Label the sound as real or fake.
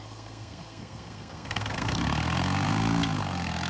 fake